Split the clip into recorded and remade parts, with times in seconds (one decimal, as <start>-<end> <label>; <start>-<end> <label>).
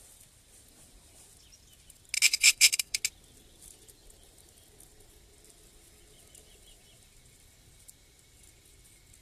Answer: 0.0-2.3 recorded; 2.3-3.0 remade; 3.0-9.2 recorded